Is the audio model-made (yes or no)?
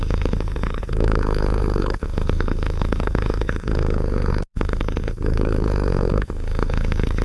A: yes